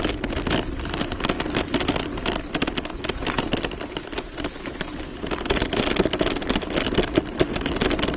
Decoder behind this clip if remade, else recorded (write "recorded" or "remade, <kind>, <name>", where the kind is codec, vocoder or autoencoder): recorded